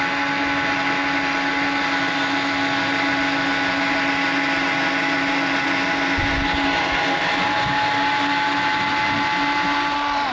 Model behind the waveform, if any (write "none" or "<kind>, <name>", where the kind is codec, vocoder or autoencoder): none